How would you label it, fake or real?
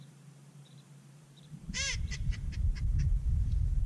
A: fake